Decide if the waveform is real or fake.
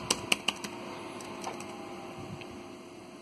real